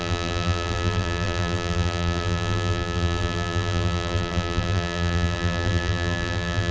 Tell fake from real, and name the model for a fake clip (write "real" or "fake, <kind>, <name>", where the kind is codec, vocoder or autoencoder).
fake, vocoder, BigVGAN v2